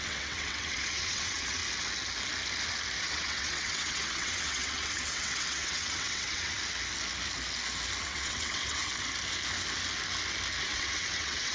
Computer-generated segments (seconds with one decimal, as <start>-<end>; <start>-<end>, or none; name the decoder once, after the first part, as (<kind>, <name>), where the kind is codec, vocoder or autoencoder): 0.0-1.6 (vocoder, WaveNeXt); 3.0-6.5; 8.0-8.9; 10.6-11.5